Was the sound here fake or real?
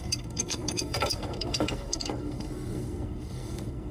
fake